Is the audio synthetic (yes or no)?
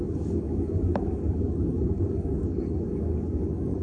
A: yes